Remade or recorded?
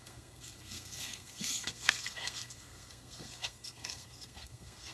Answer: remade